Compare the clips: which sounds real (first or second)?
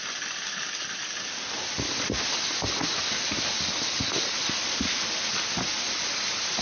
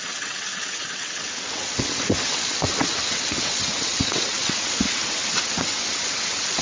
first